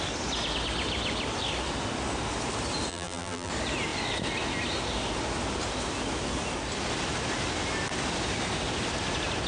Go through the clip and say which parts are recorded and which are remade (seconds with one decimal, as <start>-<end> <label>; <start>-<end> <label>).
0.0-2.9 recorded; 2.9-3.5 remade; 3.5-9.5 recorded